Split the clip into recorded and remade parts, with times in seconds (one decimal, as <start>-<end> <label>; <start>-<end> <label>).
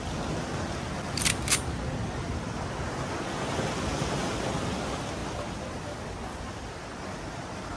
0.0-7.8 recorded